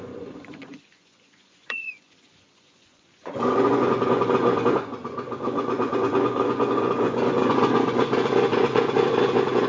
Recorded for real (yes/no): no